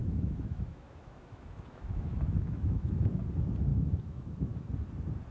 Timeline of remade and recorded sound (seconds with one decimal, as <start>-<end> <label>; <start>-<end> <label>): 0.0-3.2 remade; 3.2-3.7 recorded; 3.7-4.7 remade; 4.7-5.3 recorded